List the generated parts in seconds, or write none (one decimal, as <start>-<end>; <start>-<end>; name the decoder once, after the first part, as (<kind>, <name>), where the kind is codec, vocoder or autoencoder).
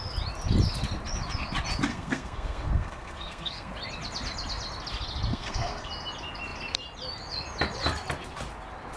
1.9-3.7 (codec, SNAC); 5.3-5.9